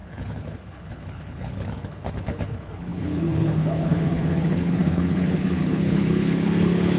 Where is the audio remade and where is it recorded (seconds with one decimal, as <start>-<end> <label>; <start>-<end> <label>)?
0.0-7.0 remade